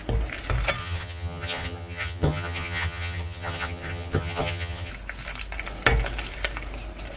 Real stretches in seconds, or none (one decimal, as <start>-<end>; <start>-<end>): 0.0-0.8; 4.9-7.2